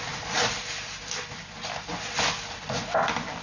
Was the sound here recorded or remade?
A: recorded